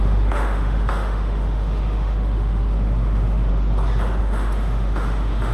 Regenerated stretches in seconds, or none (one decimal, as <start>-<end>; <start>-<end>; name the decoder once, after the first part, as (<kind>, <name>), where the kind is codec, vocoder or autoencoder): 0.0-3.5 (autoencoder, DAC-VAE); 4.2-5.5